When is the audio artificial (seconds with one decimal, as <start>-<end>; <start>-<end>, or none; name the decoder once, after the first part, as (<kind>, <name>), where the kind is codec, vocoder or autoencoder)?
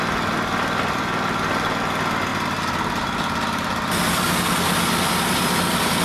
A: none